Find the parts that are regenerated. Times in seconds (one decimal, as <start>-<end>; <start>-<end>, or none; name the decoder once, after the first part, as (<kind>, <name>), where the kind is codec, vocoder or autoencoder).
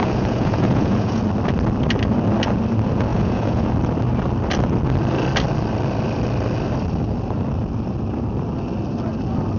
0.0-1.2 (vocoder, Vocos); 3.1-3.7